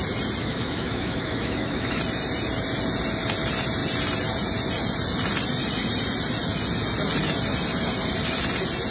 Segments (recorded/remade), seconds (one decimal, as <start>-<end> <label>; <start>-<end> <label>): 0.0-0.4 recorded; 0.4-2.0 remade; 2.0-8.9 recorded